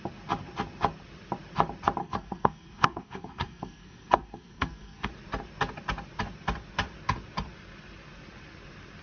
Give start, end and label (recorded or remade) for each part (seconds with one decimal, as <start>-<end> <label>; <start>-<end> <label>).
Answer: 0.0-2.0 recorded; 2.0-5.1 remade; 5.1-9.0 recorded